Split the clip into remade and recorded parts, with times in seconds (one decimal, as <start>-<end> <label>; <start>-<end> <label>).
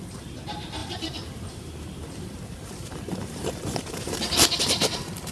0.0-0.8 recorded; 0.8-4.0 remade; 4.0-5.3 recorded